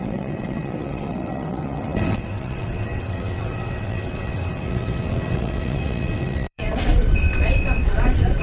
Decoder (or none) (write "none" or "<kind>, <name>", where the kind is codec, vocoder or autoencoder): vocoder, WaveNeXt